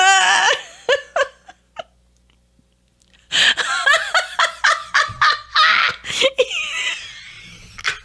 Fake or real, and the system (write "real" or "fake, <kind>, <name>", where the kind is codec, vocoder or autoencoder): real